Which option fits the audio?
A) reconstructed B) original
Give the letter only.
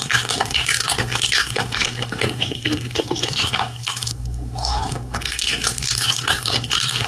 A